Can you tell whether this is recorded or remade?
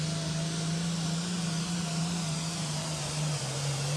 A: recorded